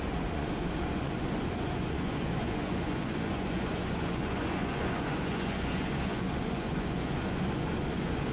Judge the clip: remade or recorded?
remade